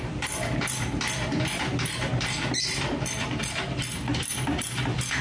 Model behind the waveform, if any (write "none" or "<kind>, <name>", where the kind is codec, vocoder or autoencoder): none